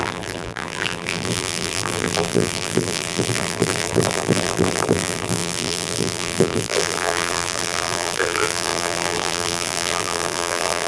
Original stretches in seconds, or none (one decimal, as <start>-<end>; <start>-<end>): none